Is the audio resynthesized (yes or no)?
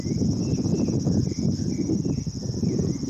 no